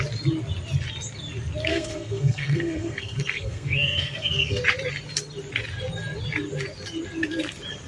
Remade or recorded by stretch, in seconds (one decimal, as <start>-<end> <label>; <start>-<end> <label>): 0.0-1.7 recorded; 1.7-4.6 remade; 4.6-7.9 recorded